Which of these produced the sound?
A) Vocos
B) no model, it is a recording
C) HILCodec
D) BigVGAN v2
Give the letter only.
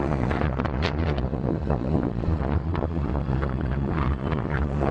A